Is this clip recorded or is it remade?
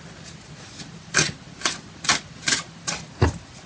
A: recorded